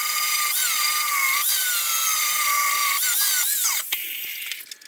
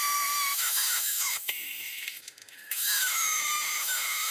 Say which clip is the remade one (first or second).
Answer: second